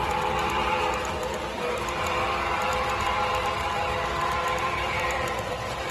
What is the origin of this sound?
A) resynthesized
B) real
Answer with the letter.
A